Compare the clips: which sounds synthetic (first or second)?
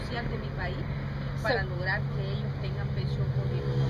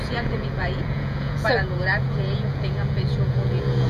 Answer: second